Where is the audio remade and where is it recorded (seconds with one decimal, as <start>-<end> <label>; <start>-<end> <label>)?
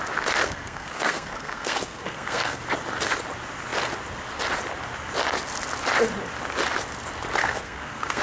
0.0-0.4 recorded; 0.4-2.6 remade; 2.6-7.4 recorded; 7.4-8.2 remade